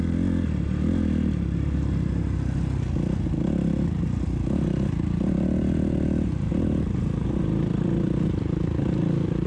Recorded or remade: recorded